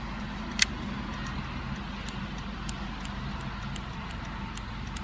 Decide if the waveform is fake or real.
real